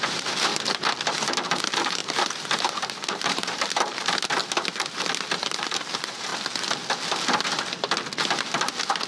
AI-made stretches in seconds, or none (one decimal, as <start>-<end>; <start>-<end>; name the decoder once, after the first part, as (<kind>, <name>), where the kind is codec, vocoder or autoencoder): 0.0-0.5 (vocoder, BigVGAN v2); 1.6-4.4; 5.2-6.3